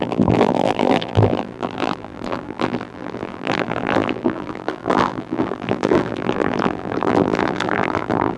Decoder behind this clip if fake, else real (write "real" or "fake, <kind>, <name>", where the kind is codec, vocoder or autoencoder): fake, vocoder, BigVGAN v2